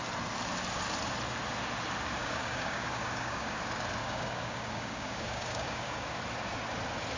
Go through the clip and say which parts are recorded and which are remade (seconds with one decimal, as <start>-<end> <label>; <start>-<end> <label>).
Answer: 0.0-2.2 recorded; 2.2-3.6 remade; 3.6-4.0 recorded; 4.0-6.2 remade; 6.2-7.2 recorded